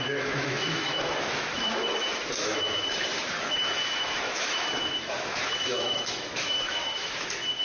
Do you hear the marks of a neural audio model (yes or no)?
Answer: yes